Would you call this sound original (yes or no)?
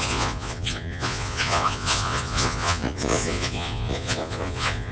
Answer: no